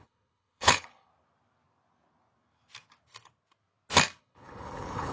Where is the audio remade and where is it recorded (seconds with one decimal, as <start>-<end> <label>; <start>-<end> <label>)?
0.0-1.1 remade; 1.1-4.2 recorded; 4.2-5.1 remade